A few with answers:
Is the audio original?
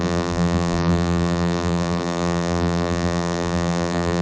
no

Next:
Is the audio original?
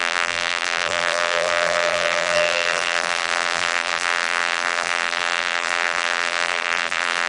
no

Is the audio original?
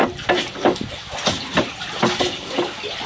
yes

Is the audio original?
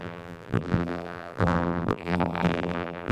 no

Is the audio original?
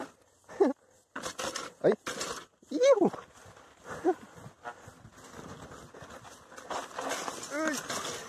yes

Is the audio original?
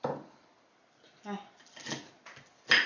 yes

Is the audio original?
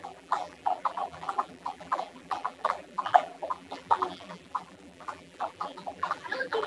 no